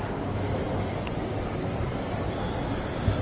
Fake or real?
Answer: real